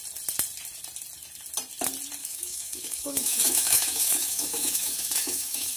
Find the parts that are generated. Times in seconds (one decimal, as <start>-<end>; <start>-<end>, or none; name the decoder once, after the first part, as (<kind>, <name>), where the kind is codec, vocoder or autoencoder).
2.2-5.8 (autoencoder, DAC-VAE)